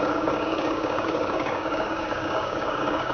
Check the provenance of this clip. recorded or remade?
remade